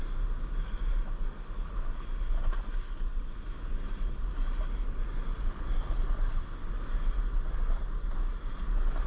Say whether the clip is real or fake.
real